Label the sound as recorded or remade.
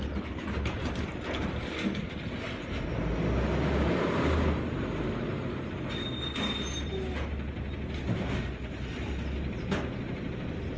recorded